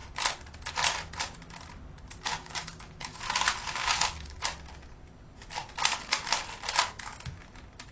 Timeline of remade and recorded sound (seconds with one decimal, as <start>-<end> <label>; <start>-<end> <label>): 0.0-2.3 recorded; 2.3-3.2 remade; 3.2-3.8 recorded; 3.8-4.4 remade; 4.4-7.9 recorded